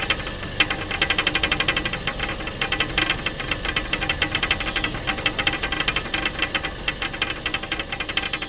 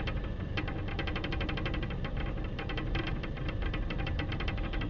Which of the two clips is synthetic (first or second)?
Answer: second